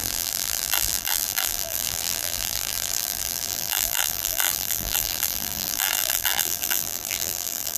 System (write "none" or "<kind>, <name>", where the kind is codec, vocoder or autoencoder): vocoder, BigVGAN v2